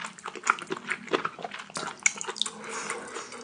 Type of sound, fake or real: real